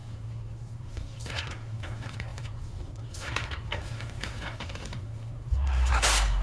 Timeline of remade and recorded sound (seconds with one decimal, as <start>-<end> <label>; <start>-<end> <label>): 0.0-6.4 remade